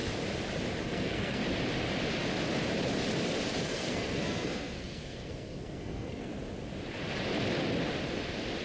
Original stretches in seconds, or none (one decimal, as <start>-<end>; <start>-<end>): 0.0-0.8; 1.4-3.6; 6.3-8.6

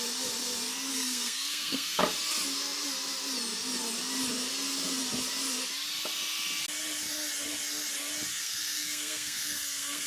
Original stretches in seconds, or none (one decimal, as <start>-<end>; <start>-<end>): 0.0-0.9; 2.0-8.3

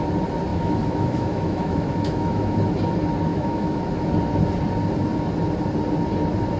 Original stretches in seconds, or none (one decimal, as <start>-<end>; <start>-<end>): 0.0-0.5; 2.6-3.3; 3.8-6.6

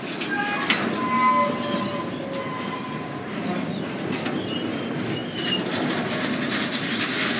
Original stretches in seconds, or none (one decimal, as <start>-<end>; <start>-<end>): 0.0-7.4

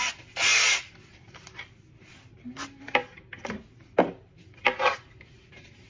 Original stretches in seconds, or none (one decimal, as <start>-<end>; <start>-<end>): 0.0-0.5; 2.1-3.0; 3.7-5.9